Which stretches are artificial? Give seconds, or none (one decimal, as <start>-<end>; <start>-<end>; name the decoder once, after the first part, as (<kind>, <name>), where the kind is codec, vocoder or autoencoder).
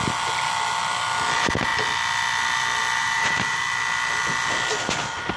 3.0-3.6 (vocoder, BigVGAN v2)